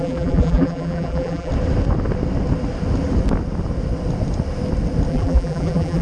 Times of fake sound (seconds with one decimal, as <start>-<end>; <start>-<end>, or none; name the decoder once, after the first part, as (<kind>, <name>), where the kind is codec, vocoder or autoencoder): 0.0-1.5 (vocoder, BigVGAN v2); 5.1-6.0